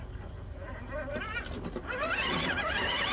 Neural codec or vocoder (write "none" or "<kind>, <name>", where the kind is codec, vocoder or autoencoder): none